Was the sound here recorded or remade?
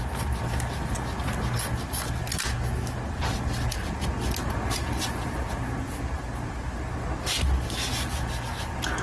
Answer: recorded